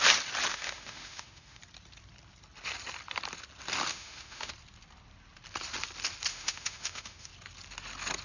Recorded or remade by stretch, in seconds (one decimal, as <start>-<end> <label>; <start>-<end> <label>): 0.0-0.5 recorded; 0.5-1.6 remade; 1.6-3.9 recorded; 3.9-4.5 remade; 4.5-6.3 recorded; 6.3-7.3 remade; 7.3-8.2 recorded